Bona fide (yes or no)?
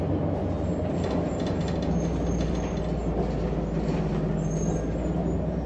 yes